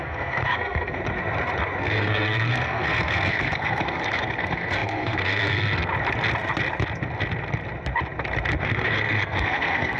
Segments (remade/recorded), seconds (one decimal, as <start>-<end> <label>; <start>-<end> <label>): 0.0-1.0 remade; 1.0-1.8 recorded; 1.8-5.9 remade; 5.9-8.6 recorded; 8.6-10.0 remade